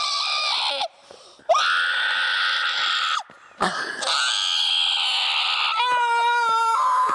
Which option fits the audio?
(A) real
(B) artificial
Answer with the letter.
A